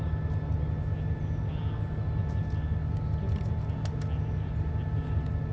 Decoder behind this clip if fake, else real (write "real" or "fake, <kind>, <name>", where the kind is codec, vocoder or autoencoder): real